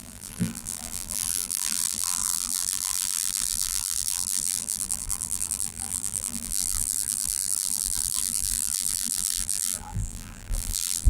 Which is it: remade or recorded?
remade